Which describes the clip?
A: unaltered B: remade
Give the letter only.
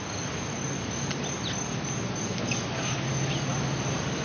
A